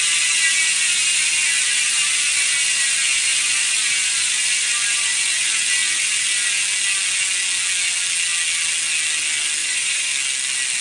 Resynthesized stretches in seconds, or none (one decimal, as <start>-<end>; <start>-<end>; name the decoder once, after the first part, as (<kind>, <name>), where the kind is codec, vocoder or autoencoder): 9.6-10.1 (vocoder, Vocos)